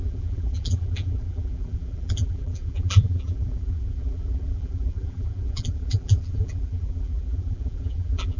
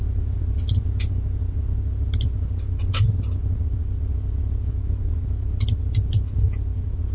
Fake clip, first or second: first